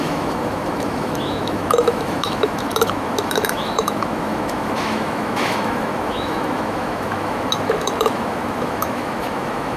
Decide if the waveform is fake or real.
fake